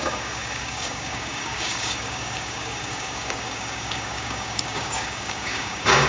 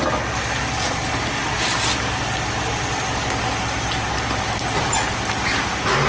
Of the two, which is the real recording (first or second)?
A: second